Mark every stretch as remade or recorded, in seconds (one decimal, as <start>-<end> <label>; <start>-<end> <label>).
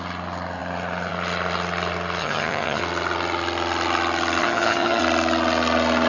0.0-2.2 recorded; 2.2-2.8 remade; 2.8-4.4 recorded; 4.4-5.0 remade; 5.0-6.1 recorded